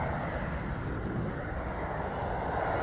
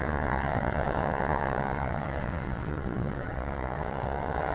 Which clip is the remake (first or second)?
second